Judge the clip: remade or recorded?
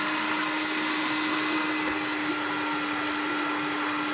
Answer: recorded